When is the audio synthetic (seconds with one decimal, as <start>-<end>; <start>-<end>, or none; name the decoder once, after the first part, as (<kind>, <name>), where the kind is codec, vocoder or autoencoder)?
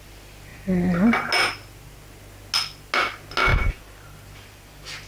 0.5-1.3 (vocoder, BigVGAN v2); 3.5-5.1